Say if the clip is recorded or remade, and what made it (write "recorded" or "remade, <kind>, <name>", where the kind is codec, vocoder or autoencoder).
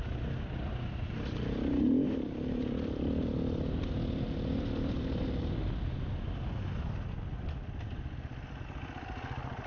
recorded